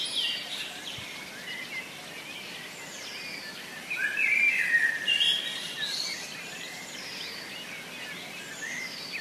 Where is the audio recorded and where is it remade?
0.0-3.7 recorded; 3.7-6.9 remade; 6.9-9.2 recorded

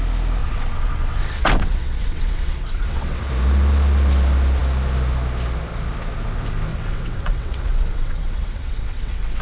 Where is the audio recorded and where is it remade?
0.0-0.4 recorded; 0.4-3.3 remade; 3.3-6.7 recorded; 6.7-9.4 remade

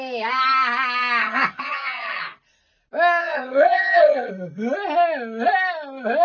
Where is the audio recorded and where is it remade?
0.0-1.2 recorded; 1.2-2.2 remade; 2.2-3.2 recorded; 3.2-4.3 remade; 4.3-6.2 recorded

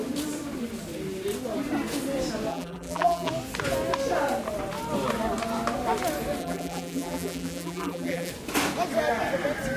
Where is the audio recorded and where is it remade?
0.0-2.5 recorded; 2.5-3.3 remade; 3.3-6.4 recorded; 6.4-8.3 remade; 8.3-9.8 recorded

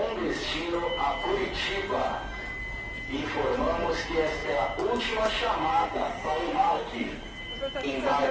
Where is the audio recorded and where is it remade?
0.0-5.7 recorded; 5.7-7.2 remade; 7.2-8.3 recorded

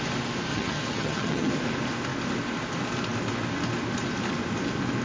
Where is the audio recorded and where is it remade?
0.0-0.5 recorded; 0.5-1.5 remade; 1.5-5.0 recorded

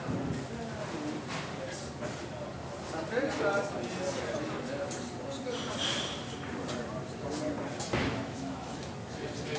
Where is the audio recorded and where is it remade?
0.0-8.0 recorded; 8.0-8.9 remade; 8.9-9.6 recorded